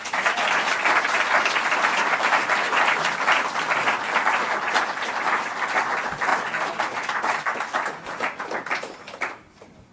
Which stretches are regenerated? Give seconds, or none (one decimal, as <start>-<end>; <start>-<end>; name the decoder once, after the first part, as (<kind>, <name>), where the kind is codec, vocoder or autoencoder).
none